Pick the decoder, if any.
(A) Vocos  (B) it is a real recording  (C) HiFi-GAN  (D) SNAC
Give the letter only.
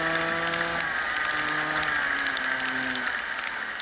B